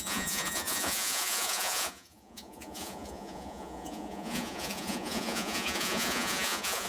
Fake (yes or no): yes